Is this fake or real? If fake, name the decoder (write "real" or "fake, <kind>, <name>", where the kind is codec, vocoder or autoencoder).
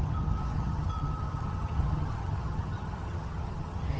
fake, vocoder, HiFi-GAN